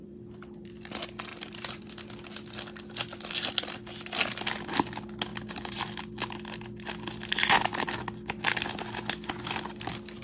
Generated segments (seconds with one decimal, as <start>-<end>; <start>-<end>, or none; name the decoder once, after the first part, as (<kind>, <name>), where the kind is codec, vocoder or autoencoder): 0.0-0.7 (vocoder, BigVGAN v2); 1.3-1.9; 5.3-6.0